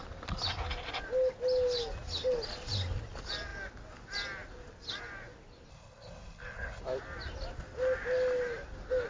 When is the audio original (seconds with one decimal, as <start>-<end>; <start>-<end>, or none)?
0.0-5.7; 6.8-9.1